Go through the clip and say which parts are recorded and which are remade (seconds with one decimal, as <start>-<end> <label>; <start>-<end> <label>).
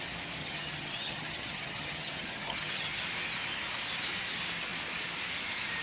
0.0-0.4 recorded; 0.4-3.0 remade; 3.0-5.8 recorded